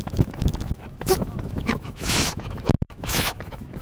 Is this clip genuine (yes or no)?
no